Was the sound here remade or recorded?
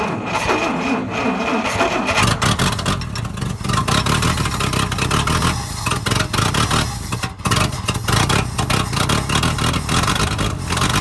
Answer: recorded